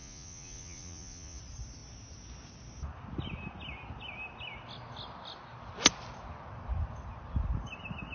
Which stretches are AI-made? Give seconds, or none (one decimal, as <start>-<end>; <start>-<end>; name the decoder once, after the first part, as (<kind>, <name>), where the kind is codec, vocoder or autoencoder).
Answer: 0.0-1.4 (vocoder, Vocos)